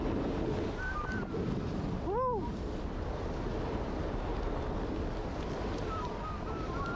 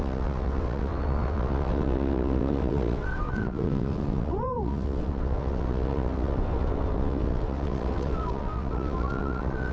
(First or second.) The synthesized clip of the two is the second